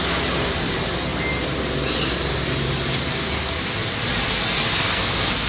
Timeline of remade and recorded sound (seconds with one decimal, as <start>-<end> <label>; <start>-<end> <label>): 0.0-3.1 recorded; 3.1-3.7 remade; 3.7-4.7 recorded; 4.7-5.5 remade